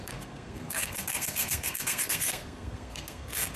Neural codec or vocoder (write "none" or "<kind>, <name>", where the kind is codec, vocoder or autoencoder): codec, SNAC